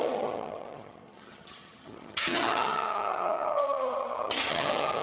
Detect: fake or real fake